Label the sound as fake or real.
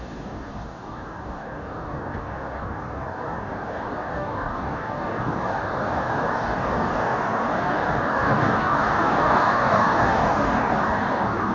fake